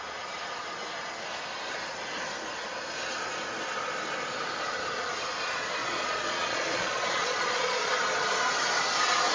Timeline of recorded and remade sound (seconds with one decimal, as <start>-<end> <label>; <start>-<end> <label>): 0.0-5.8 recorded; 5.8-7.9 remade; 7.9-9.3 recorded